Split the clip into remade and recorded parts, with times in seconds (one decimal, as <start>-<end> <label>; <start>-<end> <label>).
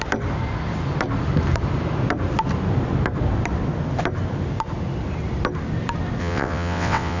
0.0-6.2 recorded; 6.2-7.2 remade